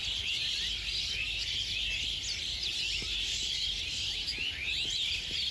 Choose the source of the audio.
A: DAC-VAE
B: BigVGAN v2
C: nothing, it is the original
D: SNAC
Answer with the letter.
C